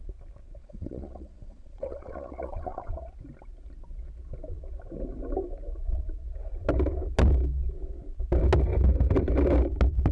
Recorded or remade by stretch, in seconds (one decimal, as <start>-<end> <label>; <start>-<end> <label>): 0.0-0.6 recorded; 0.6-2.9 remade; 2.9-10.1 recorded